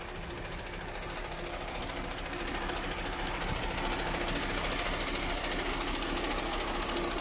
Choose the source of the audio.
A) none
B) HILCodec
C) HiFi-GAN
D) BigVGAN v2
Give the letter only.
A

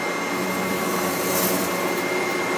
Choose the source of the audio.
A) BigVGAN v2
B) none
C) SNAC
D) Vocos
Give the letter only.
B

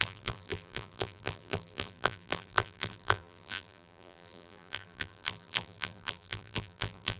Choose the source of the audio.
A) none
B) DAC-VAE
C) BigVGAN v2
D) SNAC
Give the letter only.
C